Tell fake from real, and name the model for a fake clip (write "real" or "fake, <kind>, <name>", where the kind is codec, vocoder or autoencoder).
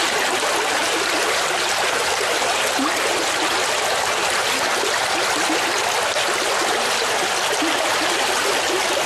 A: real